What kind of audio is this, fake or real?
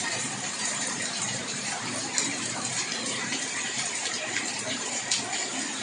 fake